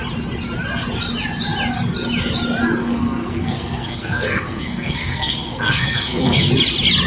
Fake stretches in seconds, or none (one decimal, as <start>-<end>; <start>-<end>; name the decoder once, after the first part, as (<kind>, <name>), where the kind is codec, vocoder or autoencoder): 2.8-6.5 (codec, SNAC)